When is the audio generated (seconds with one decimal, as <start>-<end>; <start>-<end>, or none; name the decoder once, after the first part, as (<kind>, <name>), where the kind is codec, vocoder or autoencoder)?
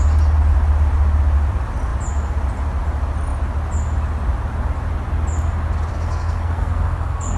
5.9-7.4 (codec, SNAC)